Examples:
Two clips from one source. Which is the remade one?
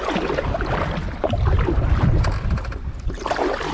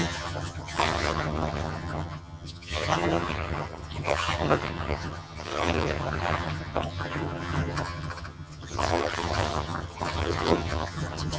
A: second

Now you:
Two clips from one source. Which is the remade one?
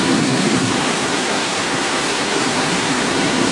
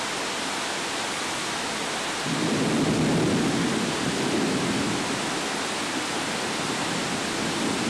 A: first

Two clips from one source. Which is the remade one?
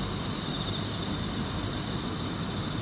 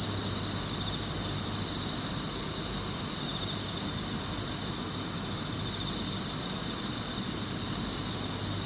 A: first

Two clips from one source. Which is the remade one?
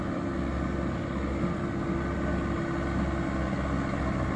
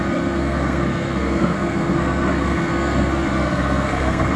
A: second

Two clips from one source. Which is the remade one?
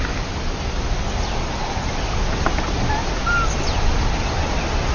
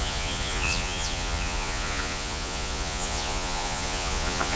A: second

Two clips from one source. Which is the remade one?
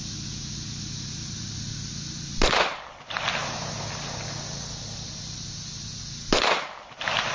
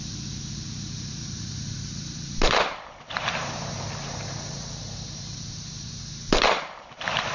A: second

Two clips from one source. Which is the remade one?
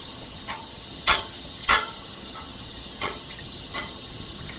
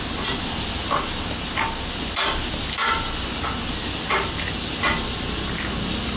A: first